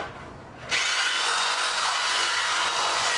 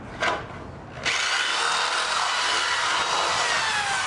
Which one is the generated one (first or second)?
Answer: first